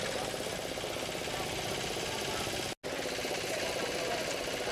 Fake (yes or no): no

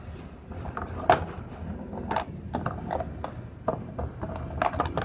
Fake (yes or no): no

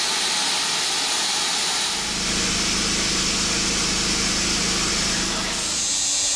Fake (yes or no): no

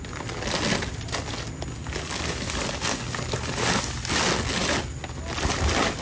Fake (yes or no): no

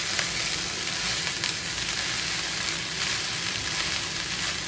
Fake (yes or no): no